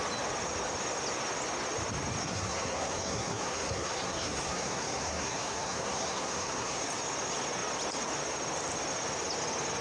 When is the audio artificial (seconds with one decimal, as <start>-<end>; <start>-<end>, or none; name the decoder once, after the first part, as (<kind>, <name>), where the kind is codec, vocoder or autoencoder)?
2.2-6.9 (codec, SNAC)

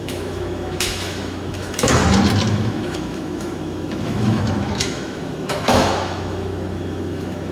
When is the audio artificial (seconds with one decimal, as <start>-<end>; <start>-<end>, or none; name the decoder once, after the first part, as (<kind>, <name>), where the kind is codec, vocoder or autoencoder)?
0.0-2.0 (autoencoder, DAC-VAE); 2.5-7.5

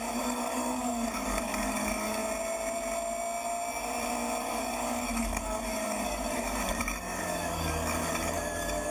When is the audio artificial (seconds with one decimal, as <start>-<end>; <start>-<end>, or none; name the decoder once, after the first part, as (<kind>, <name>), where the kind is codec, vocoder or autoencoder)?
0.0-2.2 (codec, DAC); 4.4-8.9

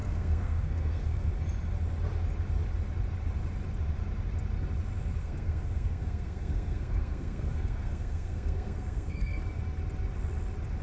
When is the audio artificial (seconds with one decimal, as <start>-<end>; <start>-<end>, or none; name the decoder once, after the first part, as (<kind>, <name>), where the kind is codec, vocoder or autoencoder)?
0.0-1.3 (codec, SNAC); 5.2-9.4